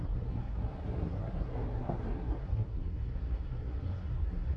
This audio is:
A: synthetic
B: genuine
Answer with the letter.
A